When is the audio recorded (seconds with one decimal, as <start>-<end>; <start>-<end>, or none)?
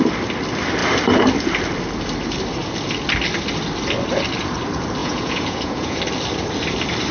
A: 0.0-5.0; 6.0-7.1